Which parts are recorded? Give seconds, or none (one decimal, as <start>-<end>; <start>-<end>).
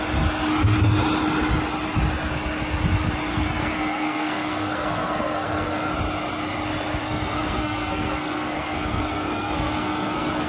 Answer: 0.0-3.3; 5.9-7.0